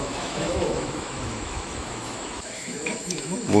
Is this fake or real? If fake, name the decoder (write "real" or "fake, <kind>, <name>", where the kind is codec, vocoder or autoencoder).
fake, autoencoder, DAC-VAE